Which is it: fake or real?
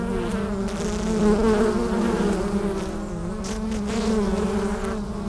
real